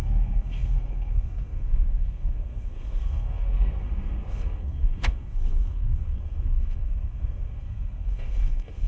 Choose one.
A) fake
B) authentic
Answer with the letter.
A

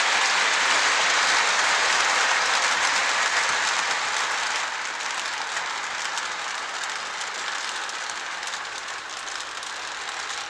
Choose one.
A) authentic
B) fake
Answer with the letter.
A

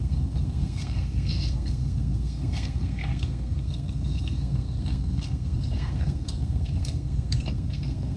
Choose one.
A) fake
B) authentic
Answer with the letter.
A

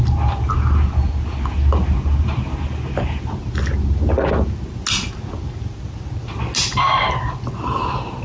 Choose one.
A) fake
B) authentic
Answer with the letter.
B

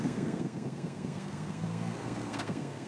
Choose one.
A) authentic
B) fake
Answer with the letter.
B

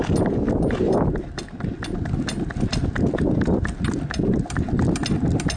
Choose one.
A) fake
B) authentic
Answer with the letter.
B